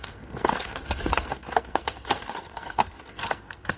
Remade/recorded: remade